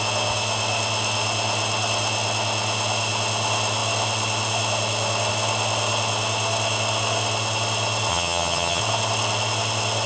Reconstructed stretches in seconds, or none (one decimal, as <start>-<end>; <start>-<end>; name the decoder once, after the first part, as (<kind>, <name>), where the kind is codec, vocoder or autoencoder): 8.1-8.8 (vocoder, HiFi-GAN)